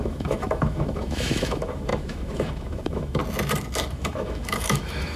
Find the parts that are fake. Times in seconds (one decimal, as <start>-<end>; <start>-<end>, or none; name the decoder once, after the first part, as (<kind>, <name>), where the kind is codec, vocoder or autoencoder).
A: 0.0-3.2 (autoencoder, DAC-VAE); 3.9-5.2